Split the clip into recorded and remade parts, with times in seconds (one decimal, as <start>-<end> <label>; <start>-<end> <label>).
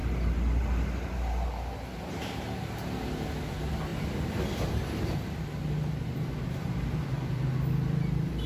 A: 0.0-3.9 recorded; 3.9-8.5 remade